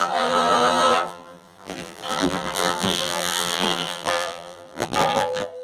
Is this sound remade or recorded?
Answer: remade